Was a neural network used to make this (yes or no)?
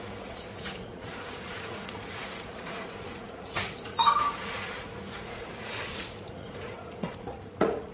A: yes